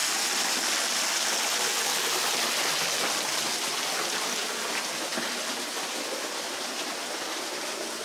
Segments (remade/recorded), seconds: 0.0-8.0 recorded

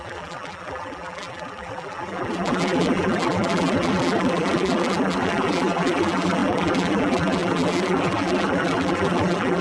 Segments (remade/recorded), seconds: 0.0-9.6 remade

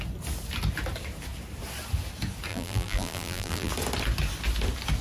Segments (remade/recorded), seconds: 0.0-2.5 recorded; 2.5-3.7 remade; 3.7-5.0 recorded

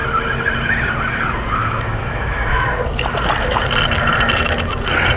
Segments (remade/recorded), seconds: 0.0-1.6 recorded; 1.6-2.6 remade; 2.6-5.2 recorded

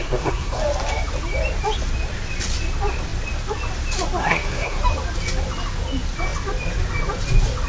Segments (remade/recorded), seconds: 0.0-0.6 remade; 0.6-4.2 recorded; 4.2-4.8 remade; 4.8-7.7 recorded

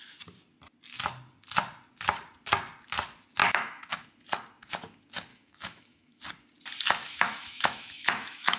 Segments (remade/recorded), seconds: 0.0-3.4 recorded; 3.4-3.9 remade; 3.9-5.3 recorded; 5.3-6.2 remade; 6.2-7.0 recorded; 7.0-8.6 remade

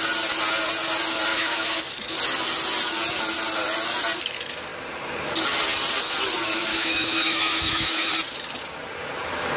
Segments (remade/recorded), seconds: 0.0-1.3 recorded; 1.3-1.8 remade; 1.8-6.7 recorded; 6.7-8.1 remade; 8.1-9.6 recorded

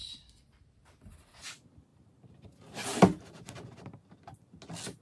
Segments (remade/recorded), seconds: 0.0-5.0 recorded